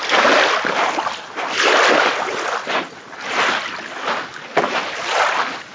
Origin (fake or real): real